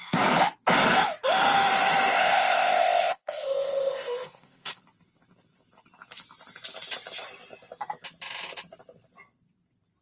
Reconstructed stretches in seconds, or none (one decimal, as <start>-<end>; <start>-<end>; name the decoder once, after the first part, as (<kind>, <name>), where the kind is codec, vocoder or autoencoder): 2.1-4.8 (codec, ZipCodec)